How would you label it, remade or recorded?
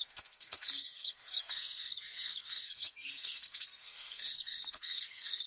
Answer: remade